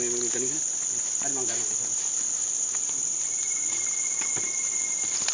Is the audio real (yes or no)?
yes